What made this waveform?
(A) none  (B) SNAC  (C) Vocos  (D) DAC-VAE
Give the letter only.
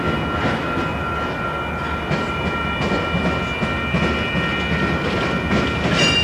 A